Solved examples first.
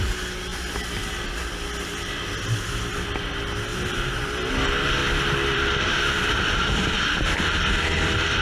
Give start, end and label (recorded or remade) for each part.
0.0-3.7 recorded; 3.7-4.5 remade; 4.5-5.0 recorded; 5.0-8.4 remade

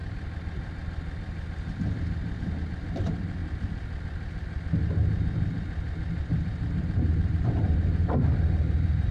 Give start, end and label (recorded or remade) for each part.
0.0-2.9 recorded; 2.9-3.4 remade; 3.4-6.8 recorded; 6.8-9.1 remade

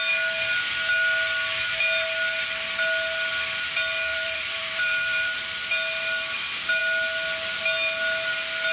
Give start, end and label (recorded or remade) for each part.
0.0-4.1 recorded; 4.1-5.4 remade; 5.4-8.7 recorded